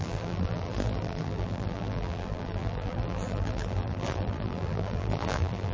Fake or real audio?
fake